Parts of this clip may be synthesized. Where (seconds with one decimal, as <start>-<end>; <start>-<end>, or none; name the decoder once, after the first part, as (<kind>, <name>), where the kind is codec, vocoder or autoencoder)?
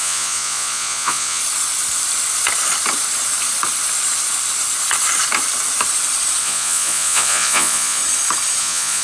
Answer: 0.0-1.4 (vocoder, Vocos); 6.4-8.0; 8.6-9.0